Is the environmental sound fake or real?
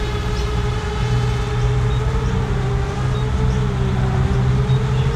real